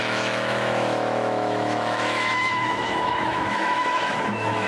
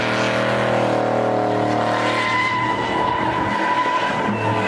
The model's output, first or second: first